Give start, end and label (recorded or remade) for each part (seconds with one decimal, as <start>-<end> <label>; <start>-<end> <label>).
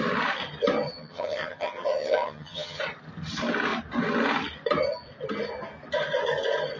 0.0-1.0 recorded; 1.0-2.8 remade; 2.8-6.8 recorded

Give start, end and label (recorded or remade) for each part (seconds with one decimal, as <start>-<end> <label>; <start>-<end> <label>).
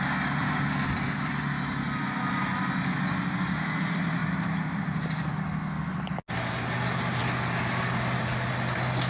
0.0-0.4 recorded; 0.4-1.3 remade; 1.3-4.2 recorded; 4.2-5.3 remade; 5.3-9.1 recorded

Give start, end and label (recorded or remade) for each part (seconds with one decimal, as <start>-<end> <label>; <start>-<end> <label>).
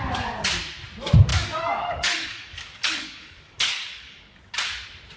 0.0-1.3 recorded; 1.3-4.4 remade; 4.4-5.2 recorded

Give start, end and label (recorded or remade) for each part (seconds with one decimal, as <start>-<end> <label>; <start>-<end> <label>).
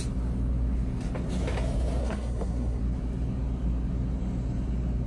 0.0-2.0 recorded; 2.0-2.8 remade; 2.8-5.1 recorded